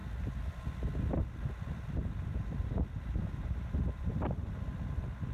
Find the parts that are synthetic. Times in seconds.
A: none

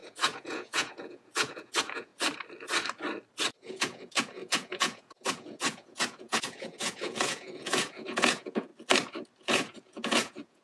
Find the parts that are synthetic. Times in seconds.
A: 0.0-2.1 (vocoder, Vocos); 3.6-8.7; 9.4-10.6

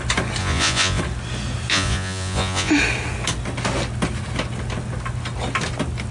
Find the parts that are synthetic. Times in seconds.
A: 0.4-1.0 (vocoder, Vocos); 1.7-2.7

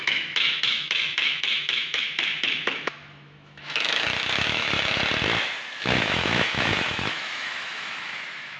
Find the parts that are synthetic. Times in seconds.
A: 0.0-5.0 (autoencoder, DAC-VAE); 5.8-8.6

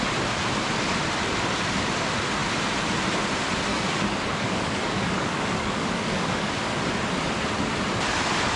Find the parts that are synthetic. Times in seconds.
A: 3.7-6.8 (codec, DAC)

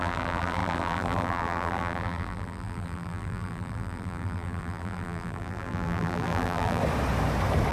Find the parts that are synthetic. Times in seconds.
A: 0.0-6.8 (vocoder, BigVGAN v2)